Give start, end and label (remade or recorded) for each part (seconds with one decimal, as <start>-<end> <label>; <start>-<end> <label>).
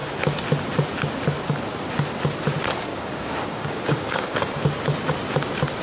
0.0-2.9 recorded; 2.9-4.5 remade; 4.5-5.8 recorded